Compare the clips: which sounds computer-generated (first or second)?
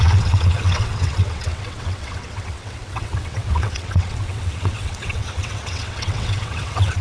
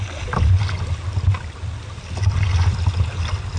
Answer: first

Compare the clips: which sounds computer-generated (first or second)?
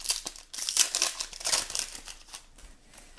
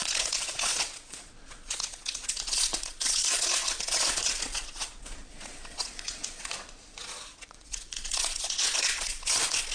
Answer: second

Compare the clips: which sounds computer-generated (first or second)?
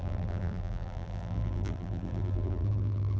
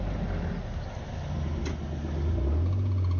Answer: first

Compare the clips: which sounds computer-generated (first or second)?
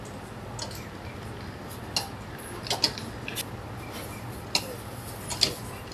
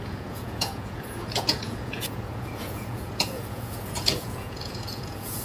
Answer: second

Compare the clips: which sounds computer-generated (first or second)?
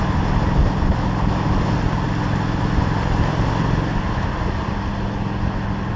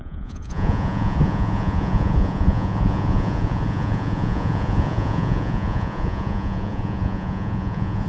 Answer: second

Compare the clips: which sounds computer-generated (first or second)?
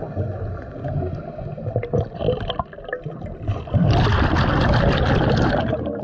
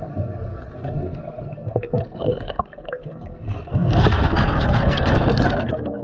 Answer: second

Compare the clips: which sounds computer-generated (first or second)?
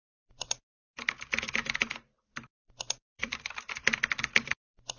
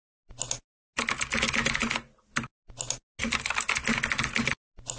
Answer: first